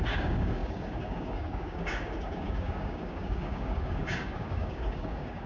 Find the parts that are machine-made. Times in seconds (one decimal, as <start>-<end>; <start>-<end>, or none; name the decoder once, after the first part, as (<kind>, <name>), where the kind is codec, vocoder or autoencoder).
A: 0.0-5.5 (codec, DAC)

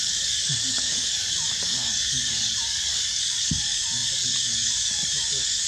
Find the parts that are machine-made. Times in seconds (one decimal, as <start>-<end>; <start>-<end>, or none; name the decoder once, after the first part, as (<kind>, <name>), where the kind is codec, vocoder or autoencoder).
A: 0.0-5.7 (codec, DAC)

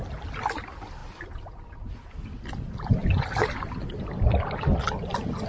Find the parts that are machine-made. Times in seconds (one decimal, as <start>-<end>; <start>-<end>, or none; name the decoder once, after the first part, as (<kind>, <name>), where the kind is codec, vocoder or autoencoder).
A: none

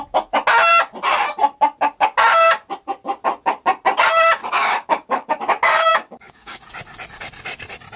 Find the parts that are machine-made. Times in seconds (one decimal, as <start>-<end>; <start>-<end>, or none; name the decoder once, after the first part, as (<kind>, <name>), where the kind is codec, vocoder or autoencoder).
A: 4.4-5.3 (codec, DAC); 5.9-6.6

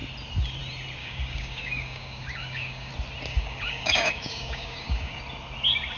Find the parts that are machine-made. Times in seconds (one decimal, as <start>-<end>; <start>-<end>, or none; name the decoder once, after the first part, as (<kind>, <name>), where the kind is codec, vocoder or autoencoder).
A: 1.0-2.9 (codec, DAC); 3.3-5.2

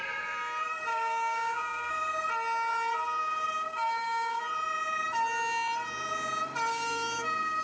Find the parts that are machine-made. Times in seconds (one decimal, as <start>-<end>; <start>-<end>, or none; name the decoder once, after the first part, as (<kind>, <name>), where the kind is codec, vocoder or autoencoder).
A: 0.9-1.9 (codec, DAC); 3.2-4.4; 6.7-7.6